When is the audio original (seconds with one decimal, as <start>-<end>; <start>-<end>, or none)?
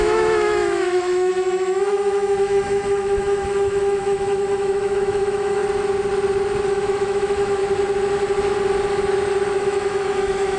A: 5.6-6.7; 7.6-9.6